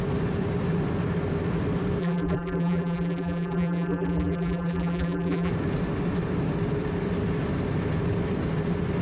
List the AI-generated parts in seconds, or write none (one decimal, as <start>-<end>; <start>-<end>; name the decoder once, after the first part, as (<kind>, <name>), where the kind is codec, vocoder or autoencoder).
2.0-5.5 (vocoder, BigVGAN v2)